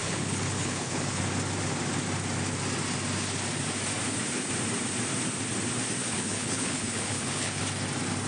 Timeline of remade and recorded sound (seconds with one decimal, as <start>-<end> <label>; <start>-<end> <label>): 0.0-1.2 remade; 1.2-6.0 recorded; 6.0-7.6 remade; 7.6-8.3 recorded